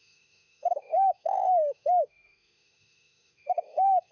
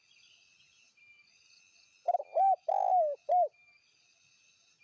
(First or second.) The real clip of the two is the second